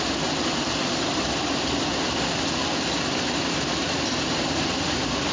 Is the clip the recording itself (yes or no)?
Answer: no